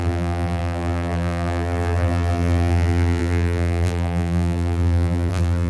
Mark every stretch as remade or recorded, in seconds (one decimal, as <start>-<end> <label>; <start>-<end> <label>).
0.0-5.7 remade